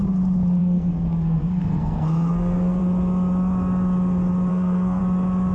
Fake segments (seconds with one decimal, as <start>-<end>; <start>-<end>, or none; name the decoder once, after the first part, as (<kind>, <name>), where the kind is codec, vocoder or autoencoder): 0.6-2.8 (codec, SNAC); 4.5-5.0